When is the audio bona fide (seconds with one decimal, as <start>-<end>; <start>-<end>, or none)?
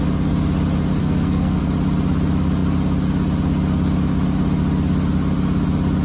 0.0-1.0; 1.6-6.0